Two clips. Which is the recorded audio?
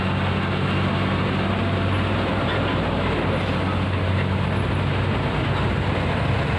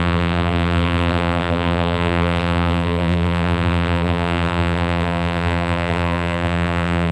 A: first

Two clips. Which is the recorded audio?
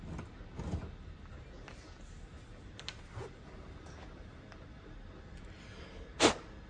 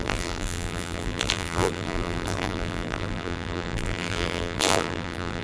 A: first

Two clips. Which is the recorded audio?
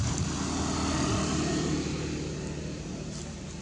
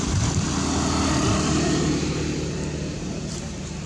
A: first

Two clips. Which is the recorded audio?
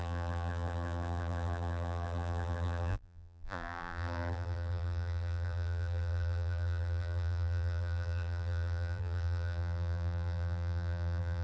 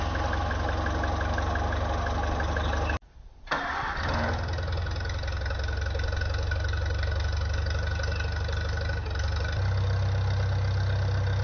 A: second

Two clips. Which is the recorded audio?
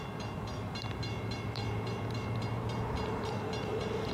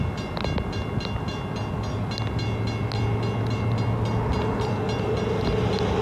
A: second